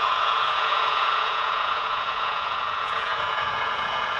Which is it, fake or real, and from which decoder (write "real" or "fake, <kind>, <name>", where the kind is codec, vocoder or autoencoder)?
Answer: fake, vocoder, Vocos